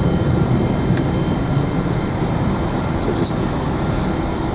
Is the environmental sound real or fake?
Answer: real